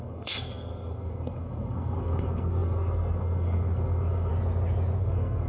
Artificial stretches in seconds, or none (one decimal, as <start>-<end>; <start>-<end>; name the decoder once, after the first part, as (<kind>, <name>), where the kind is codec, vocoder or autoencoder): 0.0-4.3 (codec, SNAC); 5.0-5.5